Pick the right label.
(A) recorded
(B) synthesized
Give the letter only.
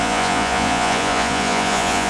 B